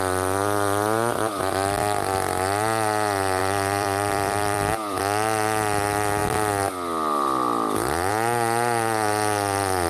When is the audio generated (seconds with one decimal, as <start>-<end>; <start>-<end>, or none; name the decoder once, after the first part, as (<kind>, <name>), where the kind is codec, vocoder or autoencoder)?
3.4-5.0 (vocoder, BigVGAN v2)